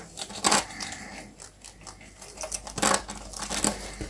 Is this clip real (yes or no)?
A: yes